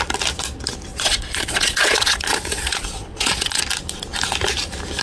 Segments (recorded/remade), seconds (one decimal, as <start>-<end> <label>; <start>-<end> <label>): 0.0-0.9 recorded; 0.9-3.6 remade; 3.6-5.0 recorded